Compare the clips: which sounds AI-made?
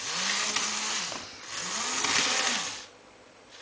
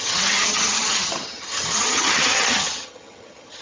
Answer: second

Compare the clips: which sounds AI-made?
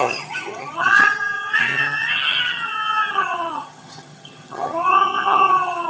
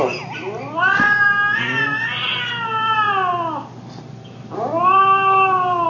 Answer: first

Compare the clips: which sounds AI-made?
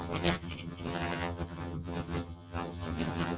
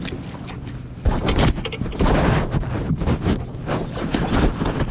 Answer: first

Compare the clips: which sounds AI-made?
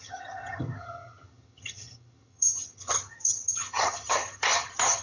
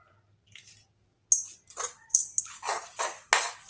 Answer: first